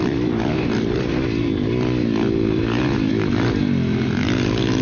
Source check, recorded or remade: recorded